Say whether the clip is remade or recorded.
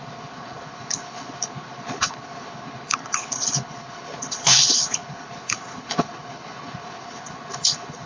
remade